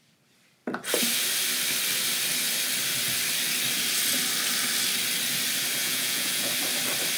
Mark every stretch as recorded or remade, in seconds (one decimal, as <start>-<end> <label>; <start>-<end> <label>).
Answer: 0.0-5.8 recorded; 5.8-6.5 remade; 6.5-7.2 recorded

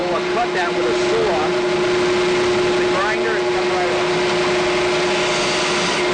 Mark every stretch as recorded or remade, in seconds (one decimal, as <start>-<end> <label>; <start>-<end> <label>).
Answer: 0.0-6.1 recorded

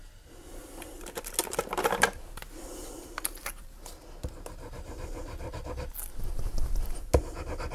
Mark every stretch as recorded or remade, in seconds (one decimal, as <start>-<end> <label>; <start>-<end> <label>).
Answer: 0.0-7.7 recorded

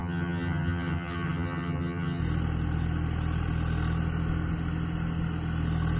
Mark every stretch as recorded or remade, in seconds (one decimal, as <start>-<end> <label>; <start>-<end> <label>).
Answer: 0.0-2.2 remade; 2.2-6.0 recorded